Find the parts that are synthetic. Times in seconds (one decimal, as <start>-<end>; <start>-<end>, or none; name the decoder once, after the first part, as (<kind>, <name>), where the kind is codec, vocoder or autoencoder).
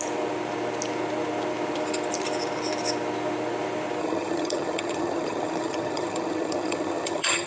4.0-7.5 (vocoder, HiFi-GAN)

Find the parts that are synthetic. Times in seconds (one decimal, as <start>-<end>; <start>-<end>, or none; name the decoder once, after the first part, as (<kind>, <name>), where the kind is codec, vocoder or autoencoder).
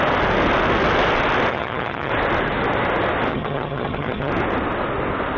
1.5-2.1 (vocoder, HiFi-GAN); 3.3-4.3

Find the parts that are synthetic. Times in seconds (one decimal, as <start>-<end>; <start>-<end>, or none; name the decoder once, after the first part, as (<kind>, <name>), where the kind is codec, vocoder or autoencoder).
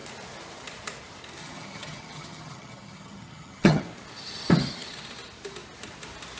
1.4-3.8 (vocoder, HiFi-GAN)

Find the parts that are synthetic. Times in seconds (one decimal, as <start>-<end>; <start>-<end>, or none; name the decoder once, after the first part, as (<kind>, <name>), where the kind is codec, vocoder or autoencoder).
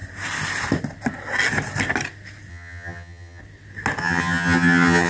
2.5-3.4 (vocoder, HiFi-GAN); 4.0-5.1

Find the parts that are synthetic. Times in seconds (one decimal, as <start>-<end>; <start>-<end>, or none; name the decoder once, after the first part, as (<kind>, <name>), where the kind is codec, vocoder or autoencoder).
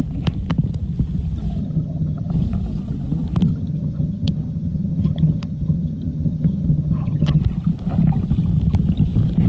1.6-2.3 (vocoder, HiFi-GAN); 3.5-7.4